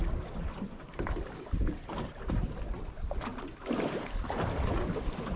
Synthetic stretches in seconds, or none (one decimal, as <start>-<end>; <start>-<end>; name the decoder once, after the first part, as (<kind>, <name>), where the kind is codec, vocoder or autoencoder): 3.3-5.0 (vocoder, BigVGAN v2)